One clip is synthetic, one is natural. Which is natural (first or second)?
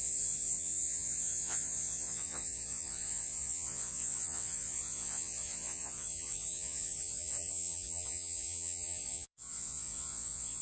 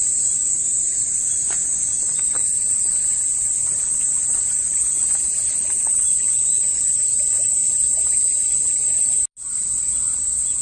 second